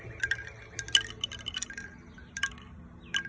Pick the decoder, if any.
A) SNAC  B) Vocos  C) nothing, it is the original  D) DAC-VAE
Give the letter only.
C